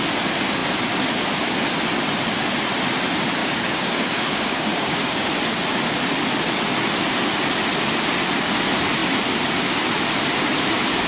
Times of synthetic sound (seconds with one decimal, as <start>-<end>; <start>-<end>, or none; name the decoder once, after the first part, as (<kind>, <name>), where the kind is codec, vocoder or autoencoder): 3.4-5.3 (codec, DAC)